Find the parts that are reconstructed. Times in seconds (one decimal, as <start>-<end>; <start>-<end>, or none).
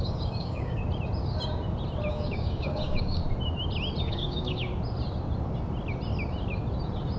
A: 0.0-0.8; 2.1-3.2; 4.0-4.7